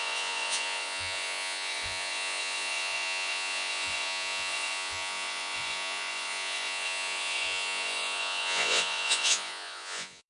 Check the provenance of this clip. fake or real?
fake